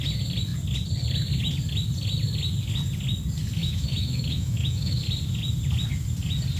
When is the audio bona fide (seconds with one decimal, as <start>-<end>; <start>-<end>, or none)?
0.0-3.6; 5.0-6.6